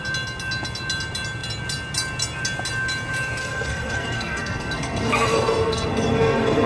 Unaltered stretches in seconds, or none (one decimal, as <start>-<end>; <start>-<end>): 0.0-3.4